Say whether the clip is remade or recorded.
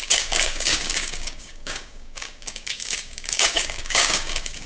remade